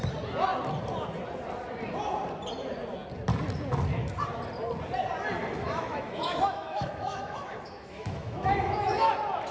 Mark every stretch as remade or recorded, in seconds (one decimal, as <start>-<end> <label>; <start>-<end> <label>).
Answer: 0.0-5.4 recorded; 5.4-9.1 remade; 9.1-9.5 recorded